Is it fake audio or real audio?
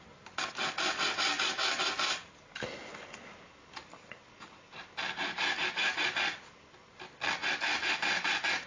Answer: real